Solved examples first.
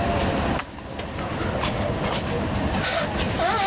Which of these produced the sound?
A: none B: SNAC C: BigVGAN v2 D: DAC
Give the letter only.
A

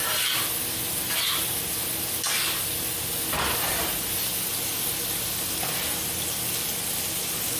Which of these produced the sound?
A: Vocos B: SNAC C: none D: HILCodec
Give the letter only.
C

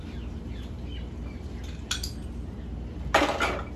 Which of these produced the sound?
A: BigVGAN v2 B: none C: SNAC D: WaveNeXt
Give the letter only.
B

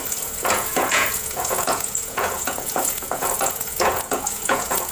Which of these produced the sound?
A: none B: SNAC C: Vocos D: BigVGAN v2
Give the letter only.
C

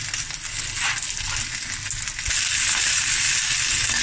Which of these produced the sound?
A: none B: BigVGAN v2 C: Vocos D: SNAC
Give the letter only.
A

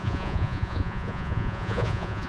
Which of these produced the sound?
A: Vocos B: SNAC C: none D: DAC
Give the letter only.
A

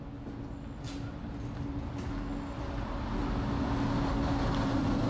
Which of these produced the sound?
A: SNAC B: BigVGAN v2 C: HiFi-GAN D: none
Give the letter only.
D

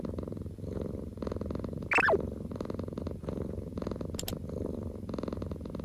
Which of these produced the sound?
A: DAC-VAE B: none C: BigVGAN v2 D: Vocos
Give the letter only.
B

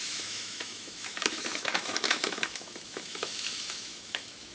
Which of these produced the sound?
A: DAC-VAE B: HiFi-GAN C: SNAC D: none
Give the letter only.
A